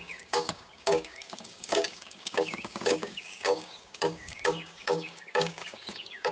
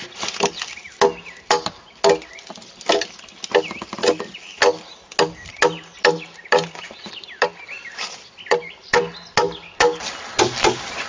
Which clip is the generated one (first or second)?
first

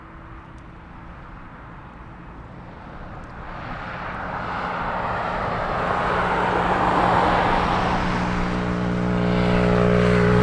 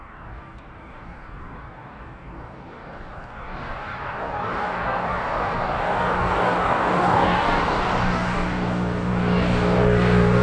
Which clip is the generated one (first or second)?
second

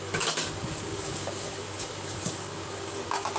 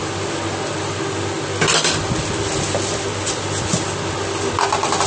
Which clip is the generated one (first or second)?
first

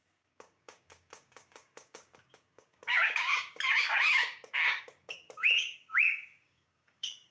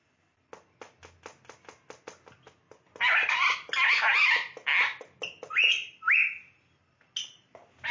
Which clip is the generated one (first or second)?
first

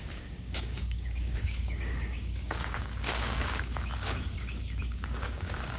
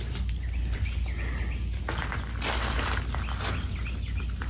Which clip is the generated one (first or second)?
first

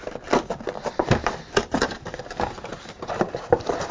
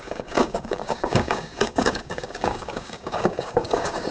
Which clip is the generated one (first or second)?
second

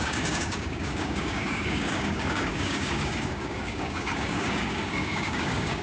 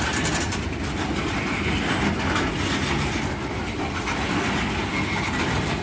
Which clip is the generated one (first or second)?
first